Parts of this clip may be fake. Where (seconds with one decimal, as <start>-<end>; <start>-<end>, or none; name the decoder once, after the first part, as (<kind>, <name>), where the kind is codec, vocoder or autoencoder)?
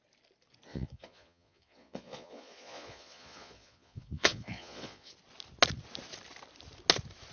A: 0.7-5.1 (vocoder, Vocos)